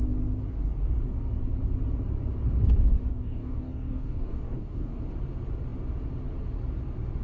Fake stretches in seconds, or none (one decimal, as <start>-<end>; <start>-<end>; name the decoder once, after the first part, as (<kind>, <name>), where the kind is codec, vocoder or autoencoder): 3.1-5.0 (codec, DAC)